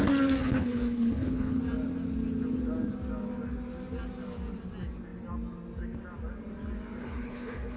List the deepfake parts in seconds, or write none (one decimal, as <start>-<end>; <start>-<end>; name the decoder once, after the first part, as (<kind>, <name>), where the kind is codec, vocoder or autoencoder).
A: 0.4-1.6 (codec, HILCodec); 7.0-7.8